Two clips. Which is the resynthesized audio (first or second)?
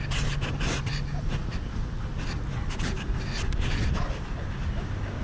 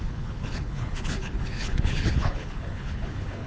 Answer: second